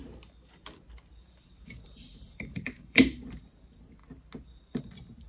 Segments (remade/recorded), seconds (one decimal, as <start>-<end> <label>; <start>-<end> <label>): 0.0-1.2 recorded; 1.2-3.3 remade; 3.3-5.3 recorded